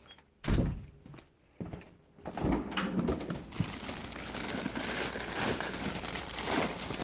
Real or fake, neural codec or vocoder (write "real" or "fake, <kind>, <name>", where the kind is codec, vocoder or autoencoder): real